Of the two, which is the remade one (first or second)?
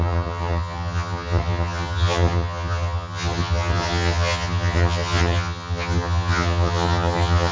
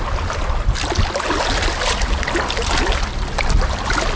first